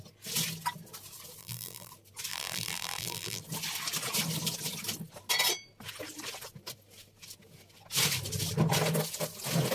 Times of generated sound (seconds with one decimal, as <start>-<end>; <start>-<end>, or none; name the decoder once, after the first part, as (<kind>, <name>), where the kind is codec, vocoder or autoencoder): 1.4-1.9 (vocoder, BigVGAN v2); 2.3-3.4